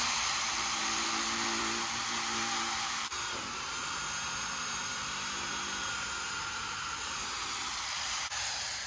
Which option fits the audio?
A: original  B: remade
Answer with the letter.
B